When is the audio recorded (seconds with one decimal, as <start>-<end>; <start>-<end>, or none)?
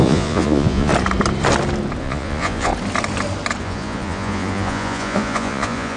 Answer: 0.9-2.0; 2.7-3.6